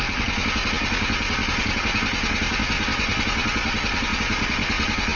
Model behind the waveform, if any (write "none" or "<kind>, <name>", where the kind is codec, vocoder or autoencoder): none